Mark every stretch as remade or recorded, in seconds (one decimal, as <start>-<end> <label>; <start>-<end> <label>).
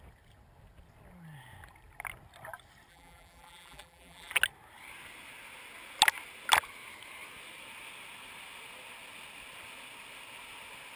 0.0-2.9 recorded; 2.9-4.3 remade; 4.3-11.0 recorded